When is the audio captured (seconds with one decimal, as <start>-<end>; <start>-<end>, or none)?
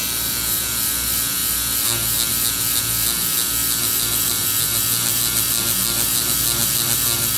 0.0-7.4